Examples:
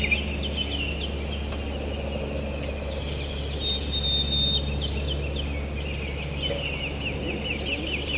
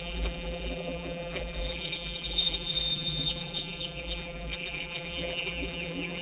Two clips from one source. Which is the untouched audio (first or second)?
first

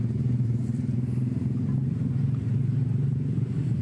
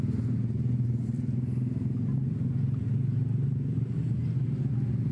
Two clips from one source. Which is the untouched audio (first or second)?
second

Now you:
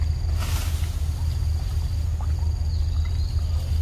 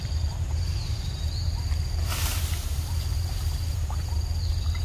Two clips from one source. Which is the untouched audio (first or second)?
first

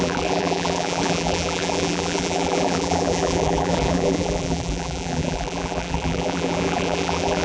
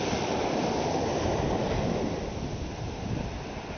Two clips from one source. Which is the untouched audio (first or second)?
second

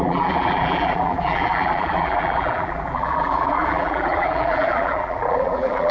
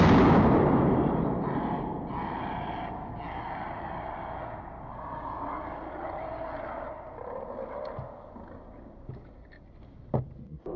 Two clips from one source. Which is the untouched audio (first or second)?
second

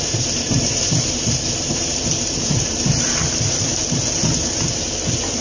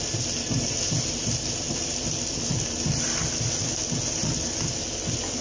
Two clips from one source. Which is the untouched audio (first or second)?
second